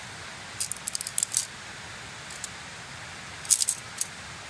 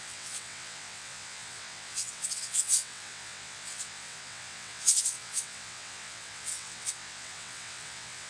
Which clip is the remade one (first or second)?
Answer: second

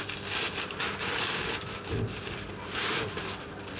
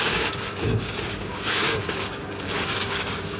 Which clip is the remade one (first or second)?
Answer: second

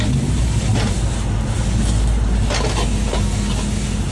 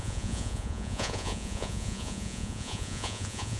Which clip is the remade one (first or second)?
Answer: second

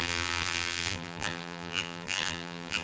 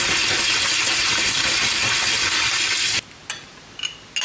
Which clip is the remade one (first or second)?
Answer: first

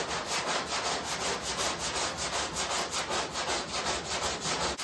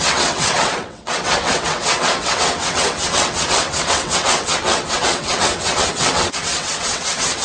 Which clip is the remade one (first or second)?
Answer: second